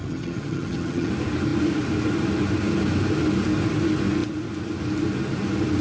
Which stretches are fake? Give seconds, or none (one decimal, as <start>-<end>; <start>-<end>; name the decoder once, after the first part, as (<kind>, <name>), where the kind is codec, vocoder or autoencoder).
0.0-1.1 (vocoder, HiFi-GAN)